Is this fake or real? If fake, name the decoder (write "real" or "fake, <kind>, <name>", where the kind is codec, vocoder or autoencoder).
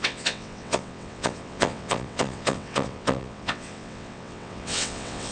fake, vocoder, WaveNeXt